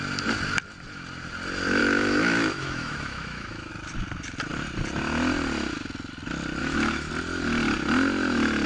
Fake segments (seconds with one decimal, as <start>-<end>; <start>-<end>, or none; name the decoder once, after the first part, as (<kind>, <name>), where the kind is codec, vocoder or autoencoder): 1.8-3.7 (autoencoder, DAC-VAE); 6.6-7.1